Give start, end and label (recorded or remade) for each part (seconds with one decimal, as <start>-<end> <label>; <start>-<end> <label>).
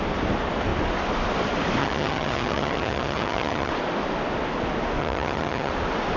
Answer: 0.0-1.8 recorded; 1.8-3.7 remade; 3.7-5.0 recorded; 5.0-5.7 remade; 5.7-6.2 recorded